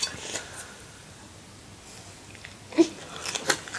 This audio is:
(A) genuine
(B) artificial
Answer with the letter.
A